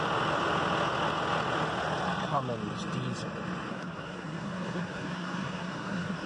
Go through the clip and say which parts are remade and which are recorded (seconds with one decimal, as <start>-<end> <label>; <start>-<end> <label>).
0.0-3.7 recorded; 3.7-6.3 remade